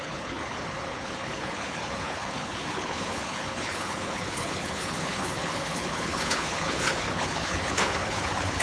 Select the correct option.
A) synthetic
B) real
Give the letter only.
A